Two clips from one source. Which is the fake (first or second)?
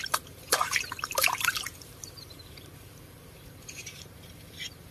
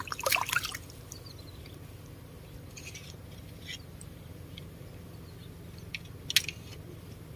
first